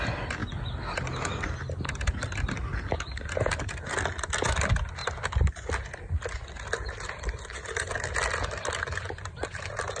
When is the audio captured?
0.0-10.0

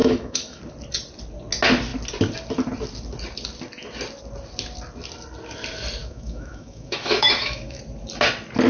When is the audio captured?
0.6-6.0; 7.8-8.7

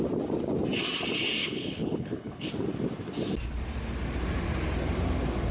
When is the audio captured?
0.0-1.4; 2.5-5.5